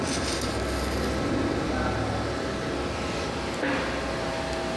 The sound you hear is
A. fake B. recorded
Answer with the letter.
B